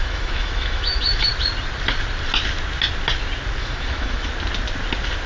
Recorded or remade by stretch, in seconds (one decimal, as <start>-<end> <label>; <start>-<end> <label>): 0.0-1.3 remade; 1.3-3.6 recorded; 3.6-4.3 remade; 4.3-5.3 recorded